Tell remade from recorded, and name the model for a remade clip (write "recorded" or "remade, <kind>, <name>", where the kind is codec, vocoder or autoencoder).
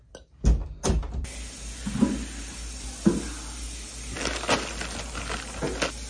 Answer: recorded